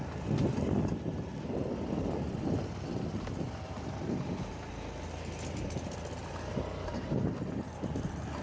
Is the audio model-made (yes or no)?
no